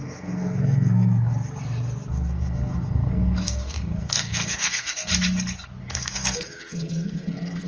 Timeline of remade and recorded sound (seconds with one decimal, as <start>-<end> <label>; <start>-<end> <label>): 0.0-1.3 remade; 1.3-2.1 recorded; 2.1-5.1 remade; 5.1-5.8 recorded; 5.8-7.7 remade